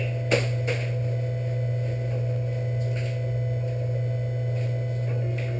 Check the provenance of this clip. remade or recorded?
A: recorded